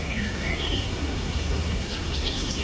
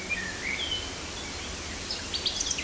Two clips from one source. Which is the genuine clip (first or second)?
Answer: second